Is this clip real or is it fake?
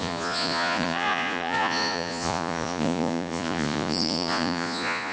fake